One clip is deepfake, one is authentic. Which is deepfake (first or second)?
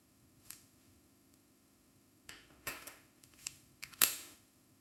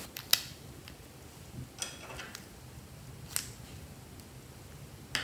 first